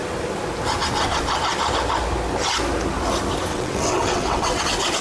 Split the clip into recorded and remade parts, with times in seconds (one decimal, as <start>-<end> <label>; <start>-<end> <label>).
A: 0.0-3.5 recorded; 3.5-4.6 remade; 4.6-5.0 recorded